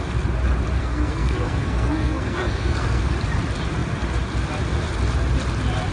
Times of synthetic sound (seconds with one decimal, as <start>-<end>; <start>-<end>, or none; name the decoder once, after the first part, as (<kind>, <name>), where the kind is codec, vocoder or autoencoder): 0.8-3.1 (codec, SNAC)